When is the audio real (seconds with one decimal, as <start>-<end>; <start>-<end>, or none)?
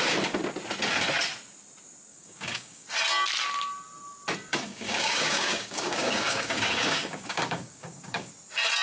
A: 0.0-2.1; 2.9-4.5; 8.3-8.8